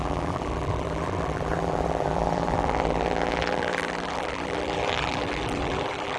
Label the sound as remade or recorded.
remade